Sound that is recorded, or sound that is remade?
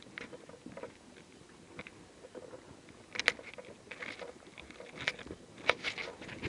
recorded